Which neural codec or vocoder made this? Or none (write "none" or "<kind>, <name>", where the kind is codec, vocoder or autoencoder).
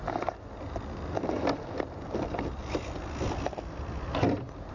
none